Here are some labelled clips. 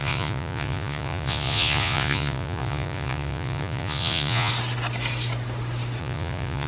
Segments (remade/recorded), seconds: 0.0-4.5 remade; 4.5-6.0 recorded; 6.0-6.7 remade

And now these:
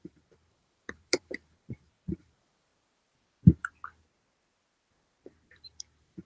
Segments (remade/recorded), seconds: 0.0-2.7 remade; 2.7-5.5 recorded; 5.5-6.3 remade

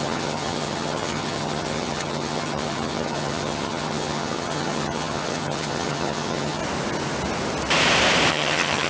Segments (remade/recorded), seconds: 0.0-6.6 remade; 6.6-8.3 recorded; 8.3-8.9 remade

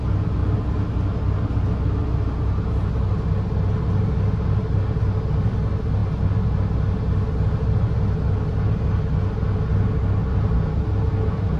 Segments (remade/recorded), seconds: 0.0-11.6 recorded

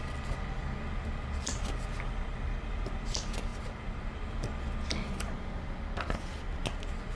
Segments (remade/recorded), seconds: 0.0-7.2 recorded

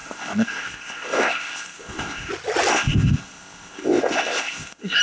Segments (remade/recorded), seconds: 0.0-2.3 remade; 2.3-2.7 recorded; 2.7-5.0 remade